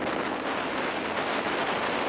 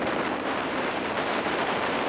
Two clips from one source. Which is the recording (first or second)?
first